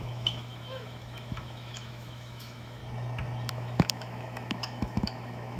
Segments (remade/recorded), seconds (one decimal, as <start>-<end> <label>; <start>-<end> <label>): 0.0-2.8 remade; 2.8-3.5 recorded; 3.5-5.6 remade